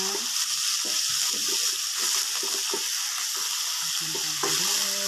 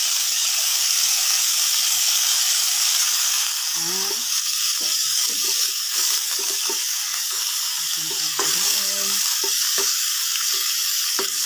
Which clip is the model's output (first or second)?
second